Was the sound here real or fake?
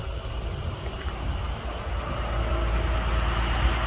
real